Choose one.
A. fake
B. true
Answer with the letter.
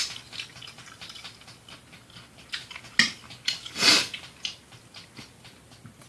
B